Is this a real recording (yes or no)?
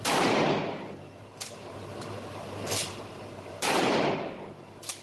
no